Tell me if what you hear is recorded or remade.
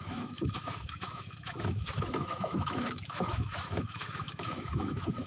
remade